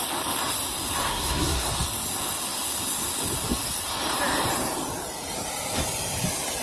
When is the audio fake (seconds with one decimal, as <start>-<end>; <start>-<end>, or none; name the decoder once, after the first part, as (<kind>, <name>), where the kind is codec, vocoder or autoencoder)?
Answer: 1.0-1.7 (codec, SNAC)